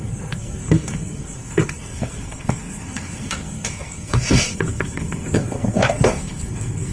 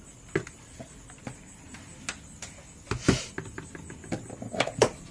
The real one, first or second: second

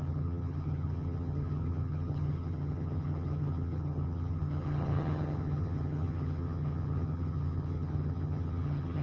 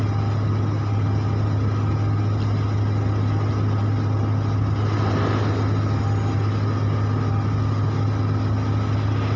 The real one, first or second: second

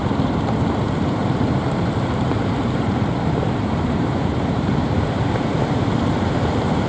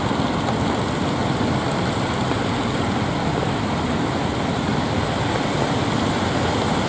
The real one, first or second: second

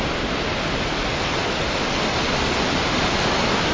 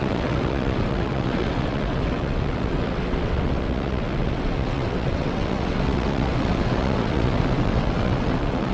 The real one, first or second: first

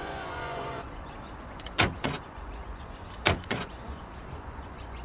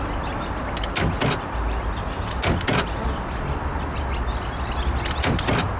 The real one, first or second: second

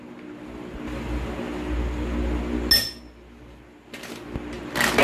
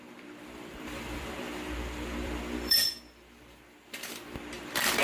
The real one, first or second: first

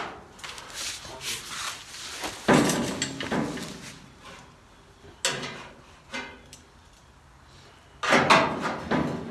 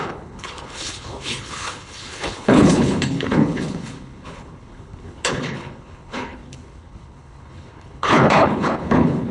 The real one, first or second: first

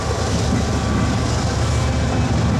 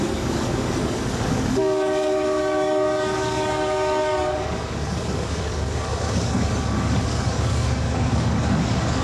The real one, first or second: first